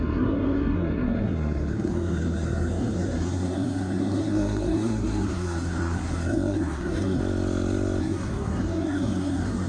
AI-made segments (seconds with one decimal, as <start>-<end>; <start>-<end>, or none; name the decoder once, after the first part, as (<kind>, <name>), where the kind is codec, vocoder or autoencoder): 0.0-7.2 (codec, SNAC); 8.0-9.7